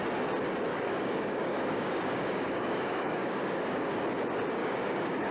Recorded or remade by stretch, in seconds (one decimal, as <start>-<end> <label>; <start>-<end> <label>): 0.0-0.7 recorded; 0.7-3.9 remade; 3.9-4.6 recorded; 4.6-5.3 remade